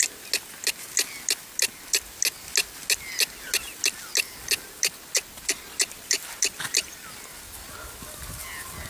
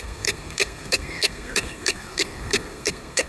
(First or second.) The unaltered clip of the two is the first